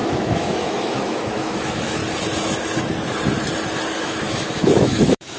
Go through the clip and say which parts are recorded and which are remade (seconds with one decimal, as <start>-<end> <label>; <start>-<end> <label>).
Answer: 0.0-2.0 remade; 2.0-4.0 recorded; 4.0-5.4 remade